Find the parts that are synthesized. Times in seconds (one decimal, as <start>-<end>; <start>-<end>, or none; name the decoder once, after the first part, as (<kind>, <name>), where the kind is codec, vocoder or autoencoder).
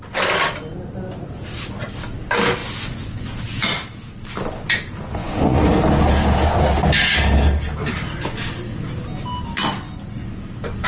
2.6-3.4 (vocoder, Vocos); 5.2-5.8